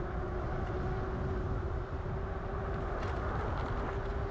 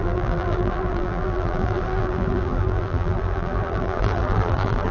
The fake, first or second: second